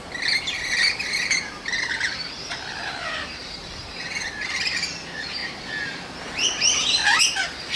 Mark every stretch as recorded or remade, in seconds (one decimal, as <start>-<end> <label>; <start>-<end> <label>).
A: 0.0-5.4 remade; 5.4-7.2 recorded; 7.2-7.8 remade